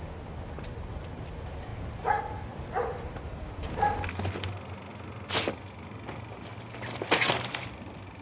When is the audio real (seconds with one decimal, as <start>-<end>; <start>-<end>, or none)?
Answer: 0.0-8.2